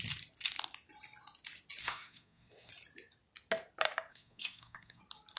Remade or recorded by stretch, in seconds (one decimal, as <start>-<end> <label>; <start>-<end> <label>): 0.0-1.8 recorded; 1.8-2.7 remade; 2.7-4.1 recorded; 4.1-5.0 remade; 5.0-5.4 recorded